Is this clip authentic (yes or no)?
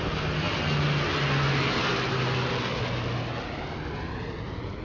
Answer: yes